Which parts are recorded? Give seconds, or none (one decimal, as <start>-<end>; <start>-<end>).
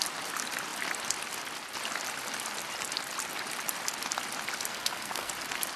0.0-4.7; 5.3-5.8